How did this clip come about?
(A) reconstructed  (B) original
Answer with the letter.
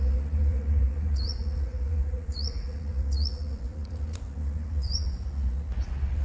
A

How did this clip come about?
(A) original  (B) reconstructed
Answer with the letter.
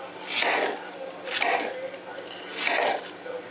A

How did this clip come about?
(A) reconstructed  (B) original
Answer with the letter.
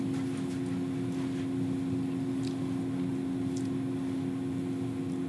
B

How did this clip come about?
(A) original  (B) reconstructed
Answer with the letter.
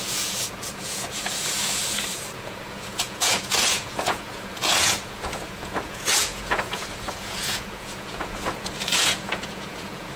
B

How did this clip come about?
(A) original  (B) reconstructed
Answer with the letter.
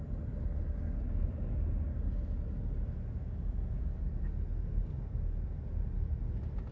A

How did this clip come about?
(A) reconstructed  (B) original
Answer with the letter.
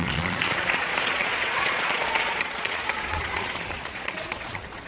A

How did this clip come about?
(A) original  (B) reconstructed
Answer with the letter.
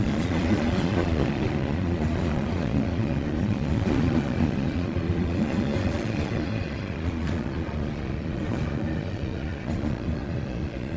B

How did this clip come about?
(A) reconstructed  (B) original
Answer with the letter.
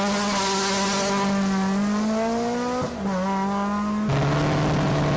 B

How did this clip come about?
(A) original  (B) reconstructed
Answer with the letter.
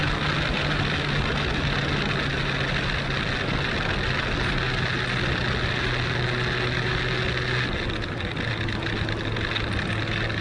A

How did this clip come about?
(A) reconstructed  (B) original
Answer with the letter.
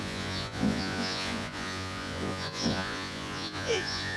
A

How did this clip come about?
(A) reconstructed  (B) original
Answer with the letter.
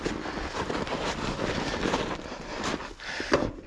B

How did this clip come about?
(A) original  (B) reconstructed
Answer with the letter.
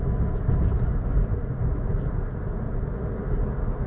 A